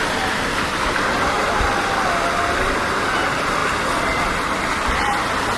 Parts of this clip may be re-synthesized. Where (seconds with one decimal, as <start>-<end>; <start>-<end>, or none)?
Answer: none